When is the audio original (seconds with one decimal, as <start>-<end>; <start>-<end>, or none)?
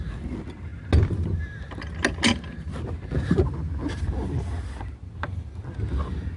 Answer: 0.0-6.4